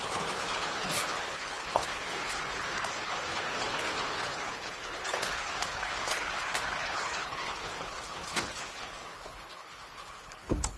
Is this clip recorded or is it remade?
remade